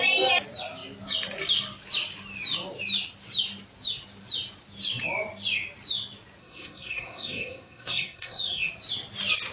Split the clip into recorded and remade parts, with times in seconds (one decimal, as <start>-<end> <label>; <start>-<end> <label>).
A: 0.0-6.4 recorded; 6.4-8.7 remade; 8.7-9.5 recorded